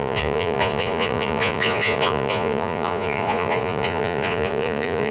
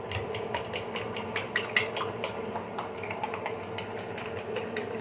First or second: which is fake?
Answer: first